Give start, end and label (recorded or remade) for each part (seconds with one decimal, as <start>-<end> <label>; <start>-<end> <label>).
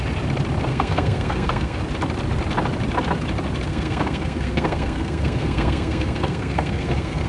0.0-0.7 recorded; 0.7-1.8 remade; 1.8-3.7 recorded; 3.7-7.3 remade